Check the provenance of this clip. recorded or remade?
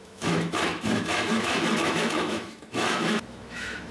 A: remade